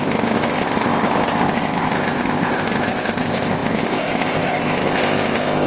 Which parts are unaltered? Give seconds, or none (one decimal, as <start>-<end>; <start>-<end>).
none